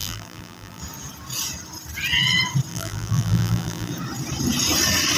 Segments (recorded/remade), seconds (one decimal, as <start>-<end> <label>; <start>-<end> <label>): 0.0-0.8 remade; 0.8-2.7 recorded; 2.7-3.9 remade; 3.9-5.2 recorded